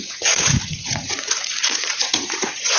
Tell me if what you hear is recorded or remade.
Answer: remade